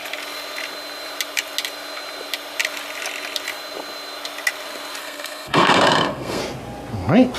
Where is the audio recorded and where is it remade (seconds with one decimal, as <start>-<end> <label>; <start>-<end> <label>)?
0.0-5.0 recorded; 5.0-6.4 remade; 6.4-7.4 recorded